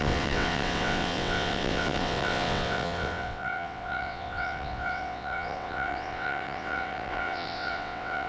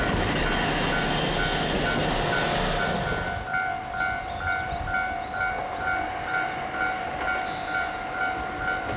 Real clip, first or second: second